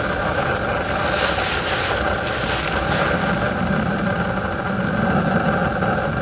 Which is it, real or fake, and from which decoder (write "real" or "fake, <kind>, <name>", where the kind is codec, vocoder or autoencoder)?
real